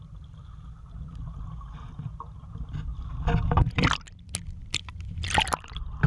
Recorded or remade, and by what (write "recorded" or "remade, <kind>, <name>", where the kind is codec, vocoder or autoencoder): recorded